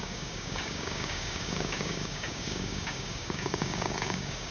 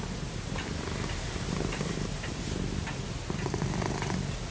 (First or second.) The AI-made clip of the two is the first